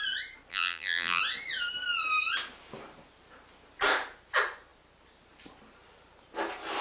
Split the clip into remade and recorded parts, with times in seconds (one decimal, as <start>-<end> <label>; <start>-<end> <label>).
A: 0.0-0.5 recorded; 0.5-1.2 remade; 1.2-6.8 recorded